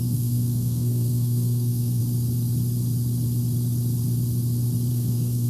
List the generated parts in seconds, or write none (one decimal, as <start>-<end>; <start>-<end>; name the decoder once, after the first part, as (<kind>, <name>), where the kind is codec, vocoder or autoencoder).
0.0-2.0 (codec, SNAC); 4.9-5.5